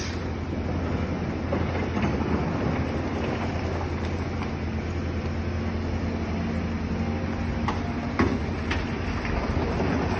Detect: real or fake real